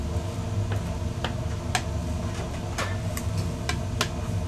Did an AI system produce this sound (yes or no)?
no